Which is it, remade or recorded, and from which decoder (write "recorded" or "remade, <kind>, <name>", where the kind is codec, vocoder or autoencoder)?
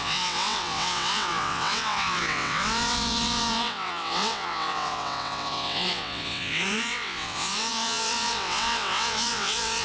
remade, vocoder, WaveNeXt